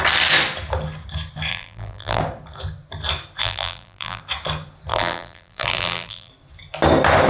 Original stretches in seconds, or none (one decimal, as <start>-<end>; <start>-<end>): 0.0-1.5; 2.2-3.4; 4.2-4.9; 6.3-7.3